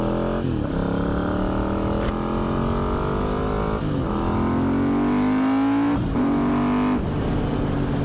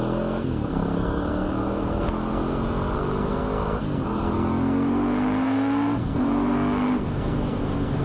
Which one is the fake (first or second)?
second